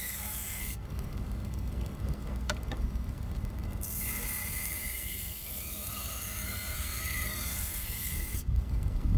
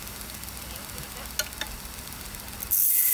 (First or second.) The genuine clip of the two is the second